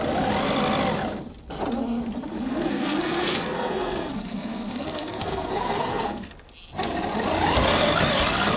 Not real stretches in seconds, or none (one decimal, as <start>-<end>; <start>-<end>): 2.3-6.3